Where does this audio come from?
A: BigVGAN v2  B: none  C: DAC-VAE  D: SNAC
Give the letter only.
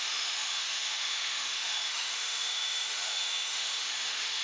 C